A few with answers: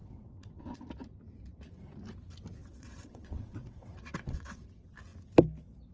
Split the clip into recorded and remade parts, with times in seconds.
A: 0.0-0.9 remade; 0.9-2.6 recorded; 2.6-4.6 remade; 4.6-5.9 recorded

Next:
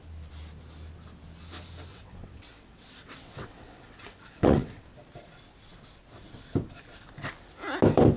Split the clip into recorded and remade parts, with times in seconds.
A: 0.0-1.9 recorded; 1.9-4.8 remade; 4.8-8.2 recorded

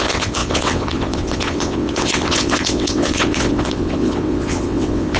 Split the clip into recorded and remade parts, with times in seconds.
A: 0.0-5.2 remade

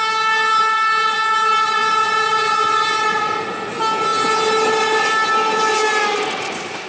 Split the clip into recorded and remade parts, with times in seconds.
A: 0.0-6.9 recorded

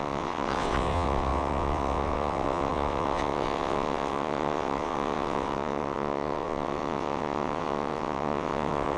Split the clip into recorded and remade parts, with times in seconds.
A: 0.0-9.0 remade